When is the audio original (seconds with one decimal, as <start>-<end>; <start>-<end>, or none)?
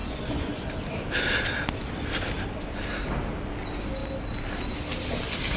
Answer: 0.7-5.6